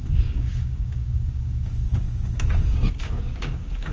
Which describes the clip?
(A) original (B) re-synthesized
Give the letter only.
B